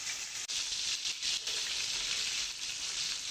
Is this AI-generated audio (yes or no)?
no